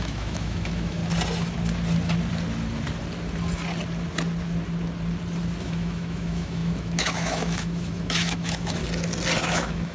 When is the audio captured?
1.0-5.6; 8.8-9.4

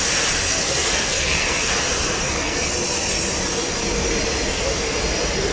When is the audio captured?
0.0-0.5; 1.7-2.2; 2.7-5.5

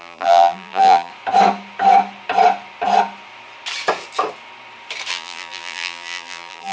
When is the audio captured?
1.1-5.1